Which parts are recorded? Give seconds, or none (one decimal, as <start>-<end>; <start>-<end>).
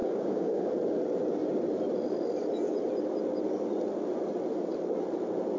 0.7-5.6